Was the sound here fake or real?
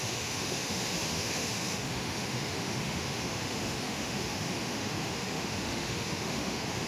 fake